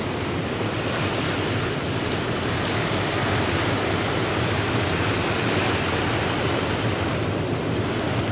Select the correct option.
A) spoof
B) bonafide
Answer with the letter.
B